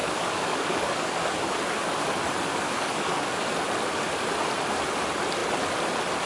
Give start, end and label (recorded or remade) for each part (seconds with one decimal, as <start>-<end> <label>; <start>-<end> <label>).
0.0-2.0 remade; 2.0-2.5 recorded; 2.5-3.5 remade; 3.5-6.3 recorded